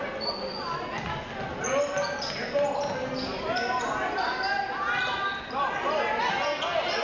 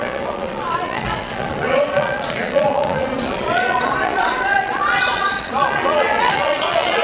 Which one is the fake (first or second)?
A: second